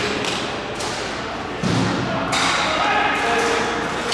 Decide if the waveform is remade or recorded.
recorded